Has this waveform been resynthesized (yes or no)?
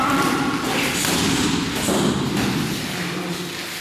no